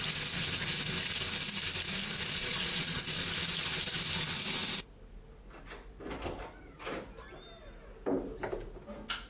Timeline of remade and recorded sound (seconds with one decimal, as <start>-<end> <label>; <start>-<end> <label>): 0.0-2.4 recorded; 2.4-3.0 remade; 3.0-9.3 recorded